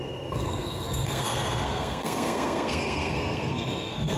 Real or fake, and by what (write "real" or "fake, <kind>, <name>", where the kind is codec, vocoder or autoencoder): fake, codec, SNAC